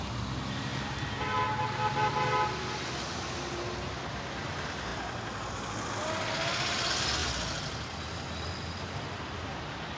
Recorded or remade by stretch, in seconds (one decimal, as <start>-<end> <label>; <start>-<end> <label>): 0.0-10.0 recorded